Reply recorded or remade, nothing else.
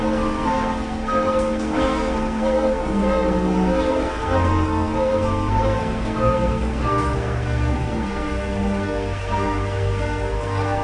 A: remade